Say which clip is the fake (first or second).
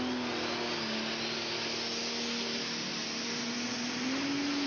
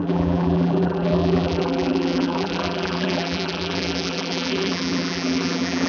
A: second